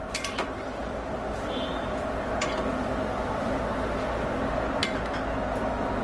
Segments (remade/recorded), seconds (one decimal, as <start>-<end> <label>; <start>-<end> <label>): 0.0-3.6 remade; 3.6-6.0 recorded